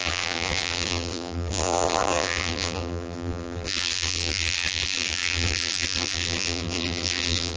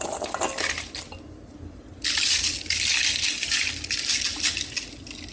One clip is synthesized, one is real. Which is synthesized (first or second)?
first